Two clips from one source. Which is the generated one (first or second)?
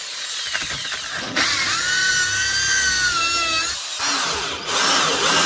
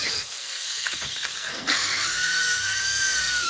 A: second